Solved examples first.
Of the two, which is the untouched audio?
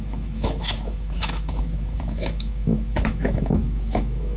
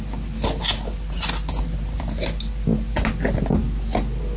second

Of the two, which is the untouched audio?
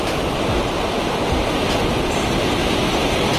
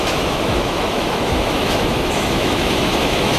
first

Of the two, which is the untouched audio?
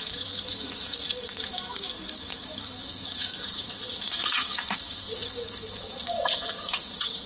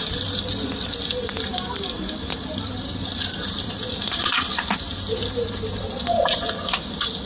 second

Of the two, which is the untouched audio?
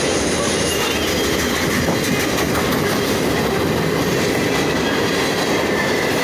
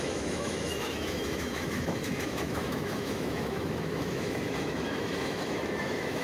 first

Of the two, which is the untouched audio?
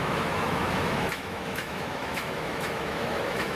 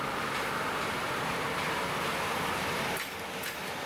second